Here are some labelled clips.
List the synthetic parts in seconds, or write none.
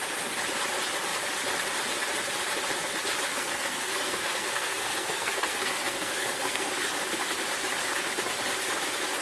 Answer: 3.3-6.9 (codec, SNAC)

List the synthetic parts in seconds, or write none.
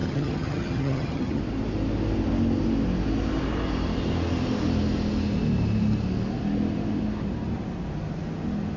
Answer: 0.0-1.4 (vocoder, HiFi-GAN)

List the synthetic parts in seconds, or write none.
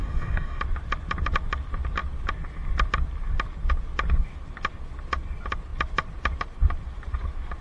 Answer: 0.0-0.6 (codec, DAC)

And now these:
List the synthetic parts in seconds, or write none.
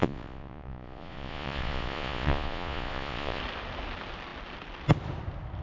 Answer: 0.0-3.4 (vocoder, Vocos)